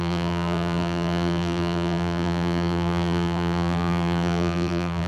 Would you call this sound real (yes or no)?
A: no